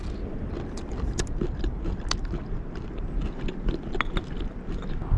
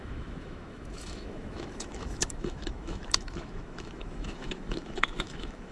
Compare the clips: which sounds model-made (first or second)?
second